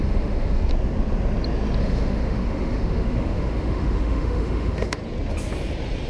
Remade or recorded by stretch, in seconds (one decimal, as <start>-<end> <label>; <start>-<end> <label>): 0.0-0.7 remade; 0.7-1.8 recorded; 1.8-5.0 remade; 5.0-6.1 recorded